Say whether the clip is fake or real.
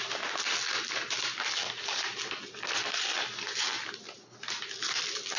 real